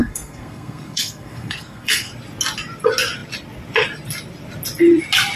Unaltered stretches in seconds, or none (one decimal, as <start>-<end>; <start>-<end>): 2.1-5.4

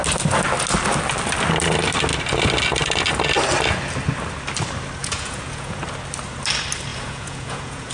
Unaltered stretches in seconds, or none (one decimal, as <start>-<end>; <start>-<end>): 0.0-5.0; 5.8-6.9

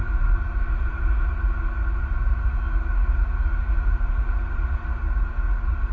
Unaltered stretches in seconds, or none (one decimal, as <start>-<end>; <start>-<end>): 0.0-5.9

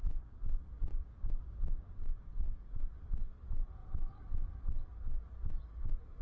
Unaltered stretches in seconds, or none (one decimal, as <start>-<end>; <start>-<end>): 0.0-0.9; 2.7-6.2